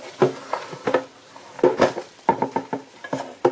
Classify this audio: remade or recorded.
recorded